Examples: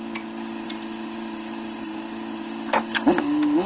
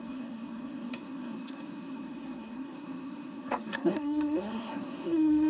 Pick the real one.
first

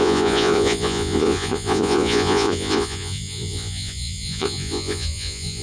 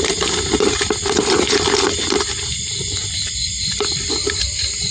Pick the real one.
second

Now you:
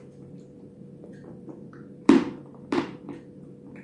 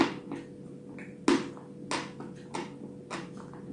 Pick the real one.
second